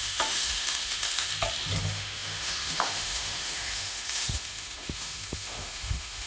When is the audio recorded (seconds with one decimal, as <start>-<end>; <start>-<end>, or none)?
1.3-1.8